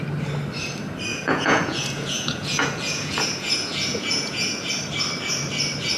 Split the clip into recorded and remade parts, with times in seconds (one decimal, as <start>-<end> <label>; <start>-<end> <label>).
0.0-1.1 recorded; 1.1-4.7 remade; 4.7-6.0 recorded